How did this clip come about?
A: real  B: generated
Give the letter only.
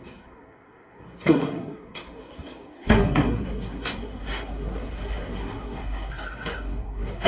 B